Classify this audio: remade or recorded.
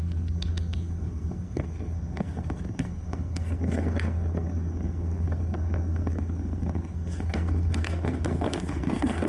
remade